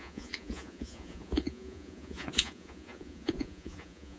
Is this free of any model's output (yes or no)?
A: no